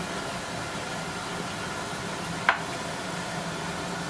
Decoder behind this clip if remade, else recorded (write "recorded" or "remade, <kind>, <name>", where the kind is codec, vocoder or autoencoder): recorded